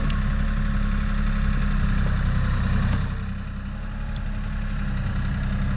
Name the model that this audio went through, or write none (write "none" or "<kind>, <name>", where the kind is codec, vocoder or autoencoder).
none